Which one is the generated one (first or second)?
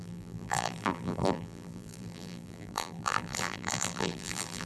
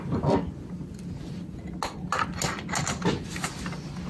first